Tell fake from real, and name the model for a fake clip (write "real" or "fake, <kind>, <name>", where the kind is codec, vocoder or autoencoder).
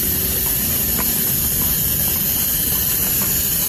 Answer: real